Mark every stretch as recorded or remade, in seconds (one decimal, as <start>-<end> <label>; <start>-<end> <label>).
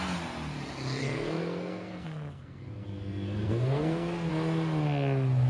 0.0-1.0 recorded; 1.0-4.3 remade; 4.3-5.5 recorded